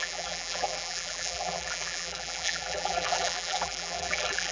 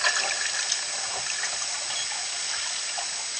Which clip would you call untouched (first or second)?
second